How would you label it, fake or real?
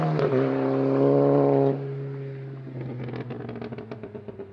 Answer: real